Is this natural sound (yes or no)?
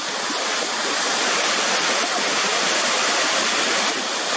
yes